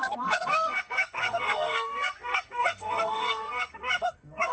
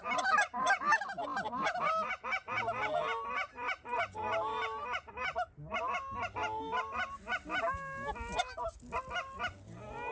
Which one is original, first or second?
second